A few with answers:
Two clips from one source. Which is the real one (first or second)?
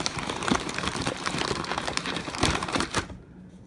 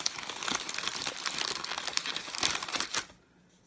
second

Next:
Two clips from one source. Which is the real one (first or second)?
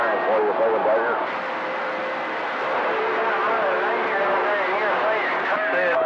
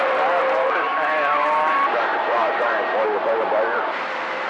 first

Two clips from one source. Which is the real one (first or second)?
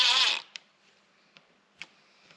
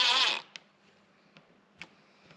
second